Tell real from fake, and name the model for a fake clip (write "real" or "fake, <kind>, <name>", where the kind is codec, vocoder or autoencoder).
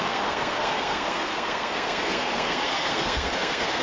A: fake, codec, SNAC